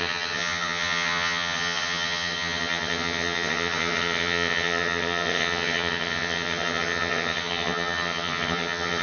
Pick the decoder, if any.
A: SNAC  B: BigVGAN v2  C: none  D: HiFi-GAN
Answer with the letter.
D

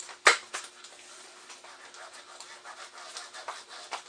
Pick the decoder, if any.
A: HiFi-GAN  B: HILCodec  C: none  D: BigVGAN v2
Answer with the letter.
C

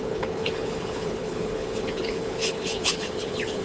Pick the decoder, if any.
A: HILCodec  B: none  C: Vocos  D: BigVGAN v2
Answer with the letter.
A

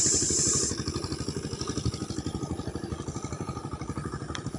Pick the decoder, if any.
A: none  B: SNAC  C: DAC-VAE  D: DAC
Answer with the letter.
A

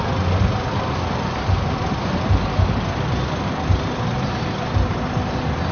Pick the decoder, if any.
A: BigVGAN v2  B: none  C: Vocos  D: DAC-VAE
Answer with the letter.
B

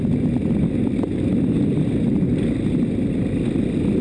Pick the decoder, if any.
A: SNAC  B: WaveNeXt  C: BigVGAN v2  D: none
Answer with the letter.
D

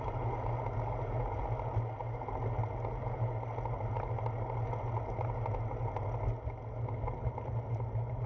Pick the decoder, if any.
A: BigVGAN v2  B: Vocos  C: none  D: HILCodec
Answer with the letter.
C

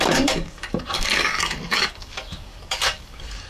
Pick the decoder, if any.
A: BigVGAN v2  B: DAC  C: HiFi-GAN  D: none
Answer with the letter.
B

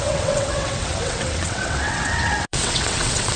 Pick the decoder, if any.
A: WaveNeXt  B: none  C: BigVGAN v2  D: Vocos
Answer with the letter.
A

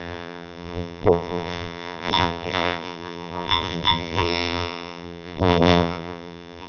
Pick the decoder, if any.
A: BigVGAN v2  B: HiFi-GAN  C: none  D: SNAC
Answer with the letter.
A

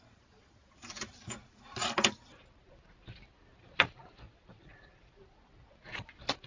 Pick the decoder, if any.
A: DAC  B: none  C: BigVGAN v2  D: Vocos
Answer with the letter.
B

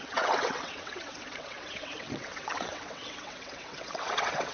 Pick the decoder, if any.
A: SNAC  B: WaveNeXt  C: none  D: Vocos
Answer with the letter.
B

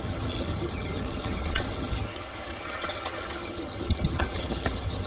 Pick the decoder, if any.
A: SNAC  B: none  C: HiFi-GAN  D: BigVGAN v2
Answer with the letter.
C